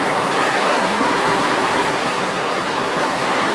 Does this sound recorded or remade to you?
remade